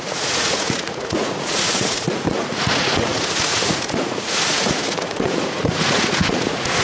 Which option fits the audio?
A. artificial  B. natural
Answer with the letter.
A